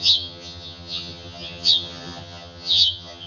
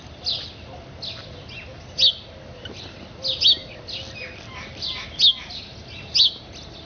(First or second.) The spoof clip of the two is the first